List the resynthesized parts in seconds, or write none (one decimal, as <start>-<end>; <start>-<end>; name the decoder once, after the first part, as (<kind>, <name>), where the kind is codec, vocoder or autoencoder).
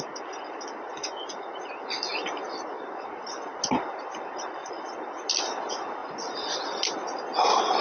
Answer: none